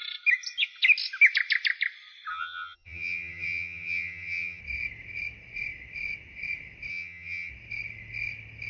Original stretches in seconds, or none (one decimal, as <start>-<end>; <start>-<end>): 0.0-2.3; 4.6-6.9; 7.5-8.7